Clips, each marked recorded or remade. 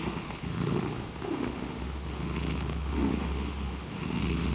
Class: remade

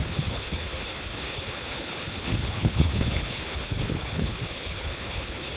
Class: remade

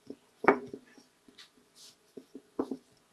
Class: remade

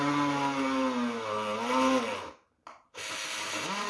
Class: recorded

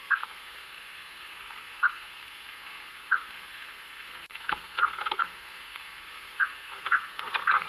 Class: remade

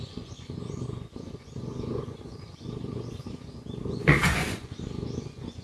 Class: remade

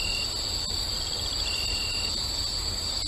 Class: recorded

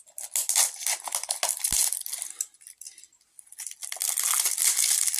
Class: recorded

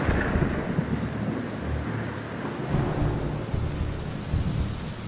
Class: recorded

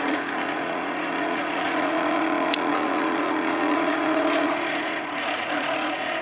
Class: remade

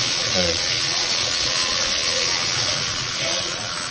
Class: remade